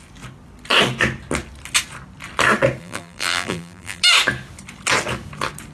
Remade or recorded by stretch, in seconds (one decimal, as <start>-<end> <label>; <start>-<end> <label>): 0.0-2.8 recorded; 2.8-4.0 remade; 4.0-5.7 recorded